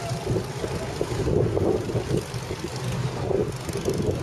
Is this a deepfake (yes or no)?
no